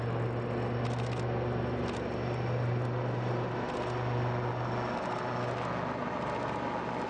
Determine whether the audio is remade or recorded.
recorded